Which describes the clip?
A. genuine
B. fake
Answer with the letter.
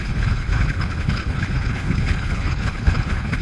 B